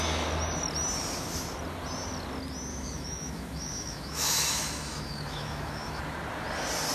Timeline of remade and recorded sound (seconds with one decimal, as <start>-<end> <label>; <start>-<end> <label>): 0.0-2.7 recorded; 2.7-6.0 remade; 6.0-6.9 recorded